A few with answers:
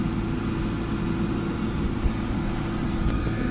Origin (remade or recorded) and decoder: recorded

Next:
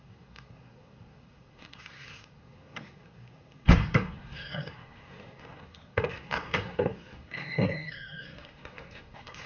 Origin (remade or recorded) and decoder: remade, codec, SNAC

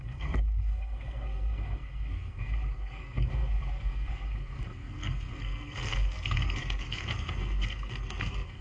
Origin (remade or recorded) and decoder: remade, codec, SNAC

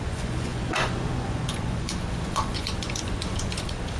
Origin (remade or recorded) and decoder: remade, vocoder, Vocos